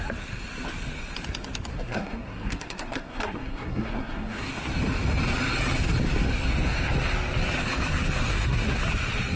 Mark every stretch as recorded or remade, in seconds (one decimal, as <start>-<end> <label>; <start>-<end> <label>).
0.0-1.7 recorded; 1.7-4.5 remade; 4.5-8.2 recorded; 8.2-8.8 remade; 8.8-9.4 recorded